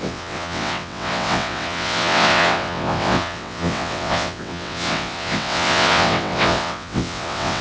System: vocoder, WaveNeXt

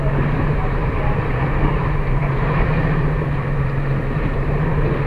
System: vocoder, BigVGAN v2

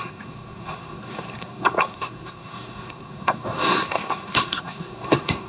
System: codec, SNAC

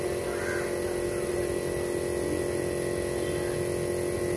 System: none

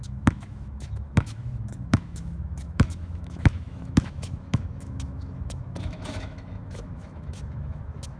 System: autoencoder, DAC-VAE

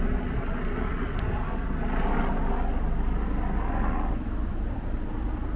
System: none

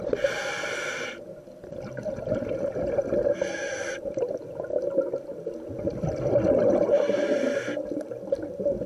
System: none